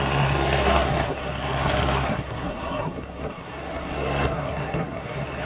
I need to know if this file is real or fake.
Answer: fake